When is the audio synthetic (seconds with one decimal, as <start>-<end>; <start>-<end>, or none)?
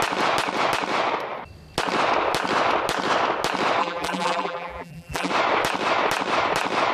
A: 3.8-5.3